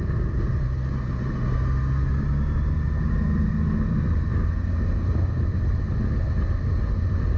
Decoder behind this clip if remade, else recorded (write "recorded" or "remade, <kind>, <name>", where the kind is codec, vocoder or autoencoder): recorded